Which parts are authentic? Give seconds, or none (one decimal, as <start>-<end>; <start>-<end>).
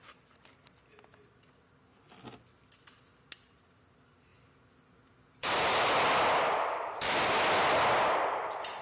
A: 0.0-8.8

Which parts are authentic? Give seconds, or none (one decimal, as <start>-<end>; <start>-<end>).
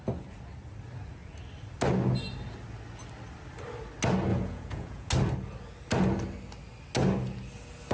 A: 0.0-4.3; 5.1-7.9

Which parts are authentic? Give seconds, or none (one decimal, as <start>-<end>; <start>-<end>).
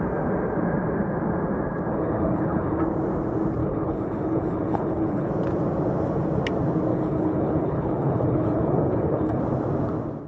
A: 0.0-1.9; 2.8-3.6; 5.3-6.9; 9.4-10.3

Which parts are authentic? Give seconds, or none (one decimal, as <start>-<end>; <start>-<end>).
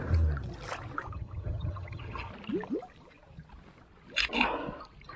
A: 0.0-1.1; 2.3-5.2